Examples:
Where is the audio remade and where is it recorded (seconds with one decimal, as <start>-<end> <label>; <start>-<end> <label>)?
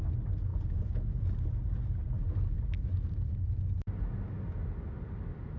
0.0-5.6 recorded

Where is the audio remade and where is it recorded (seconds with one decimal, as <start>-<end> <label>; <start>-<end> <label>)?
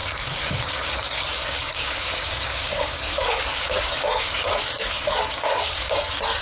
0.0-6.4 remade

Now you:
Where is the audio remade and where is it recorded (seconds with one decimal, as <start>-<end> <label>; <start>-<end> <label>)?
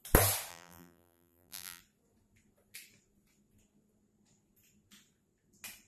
0.0-0.5 recorded; 0.5-1.8 remade; 1.8-5.9 recorded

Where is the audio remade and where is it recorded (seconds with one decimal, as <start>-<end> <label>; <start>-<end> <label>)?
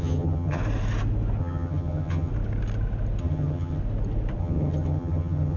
0.0-0.6 remade; 0.6-1.4 recorded; 1.4-2.3 remade; 2.3-3.2 recorded; 3.2-3.8 remade; 3.8-4.4 recorded; 4.4-5.6 remade